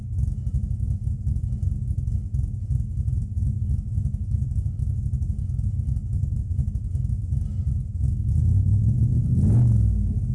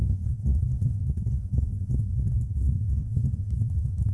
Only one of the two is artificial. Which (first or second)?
second